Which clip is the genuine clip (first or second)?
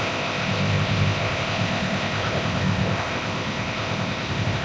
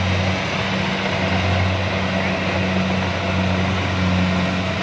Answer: second